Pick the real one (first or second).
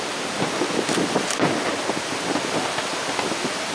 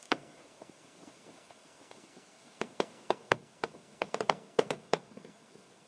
first